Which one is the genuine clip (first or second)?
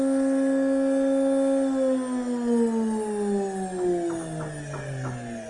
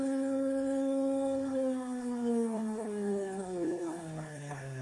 first